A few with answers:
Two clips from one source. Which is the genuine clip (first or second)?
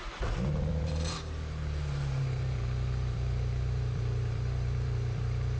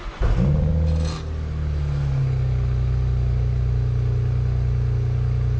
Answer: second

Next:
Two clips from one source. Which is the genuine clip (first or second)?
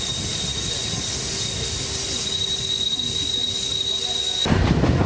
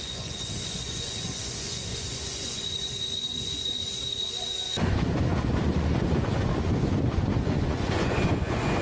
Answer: first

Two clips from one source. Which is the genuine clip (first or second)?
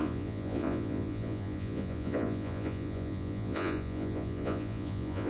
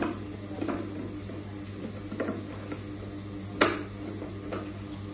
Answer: second